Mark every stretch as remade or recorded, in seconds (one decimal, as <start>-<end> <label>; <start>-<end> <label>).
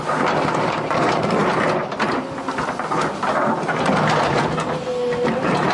0.0-5.7 recorded